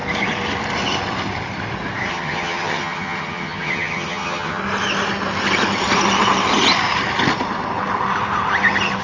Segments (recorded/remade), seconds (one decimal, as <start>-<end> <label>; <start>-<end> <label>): 0.0-2.1 recorded; 2.1-4.6 remade; 4.6-9.0 recorded